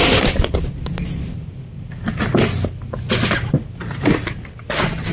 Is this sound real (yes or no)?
yes